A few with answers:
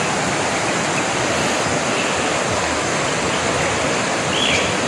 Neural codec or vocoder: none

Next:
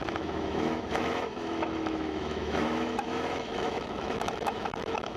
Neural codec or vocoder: autoencoder, DAC-VAE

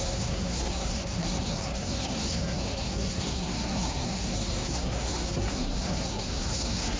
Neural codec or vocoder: codec, SNAC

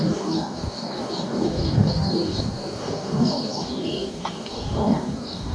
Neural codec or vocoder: codec, DAC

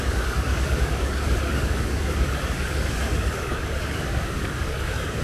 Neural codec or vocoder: codec, DAC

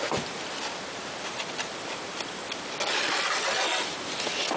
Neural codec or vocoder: vocoder, BigVGAN v2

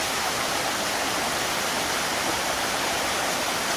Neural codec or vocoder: none